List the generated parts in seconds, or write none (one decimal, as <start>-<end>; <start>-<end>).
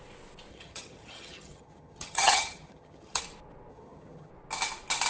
0.5-3.2; 3.7-4.3